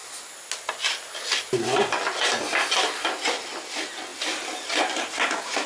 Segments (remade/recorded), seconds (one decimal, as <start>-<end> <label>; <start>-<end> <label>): 0.0-5.7 recorded